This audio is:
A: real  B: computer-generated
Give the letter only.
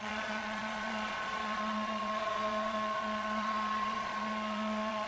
B